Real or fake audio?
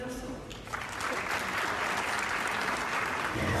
real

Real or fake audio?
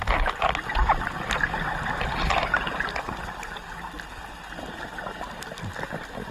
real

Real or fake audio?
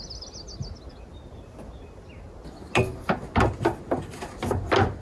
real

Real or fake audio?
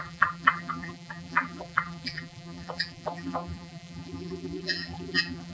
fake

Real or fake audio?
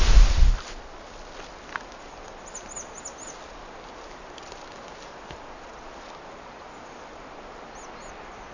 real